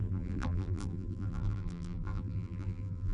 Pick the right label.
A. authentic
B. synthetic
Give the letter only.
B